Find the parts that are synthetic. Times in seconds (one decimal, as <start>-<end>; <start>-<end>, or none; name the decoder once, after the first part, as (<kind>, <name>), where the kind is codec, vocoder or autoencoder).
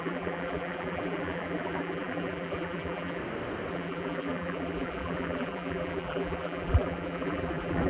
0.0-3.2 (vocoder, BigVGAN v2); 3.7-7.9